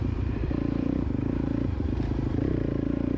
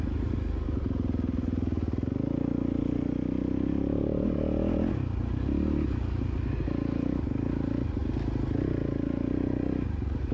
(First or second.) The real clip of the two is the second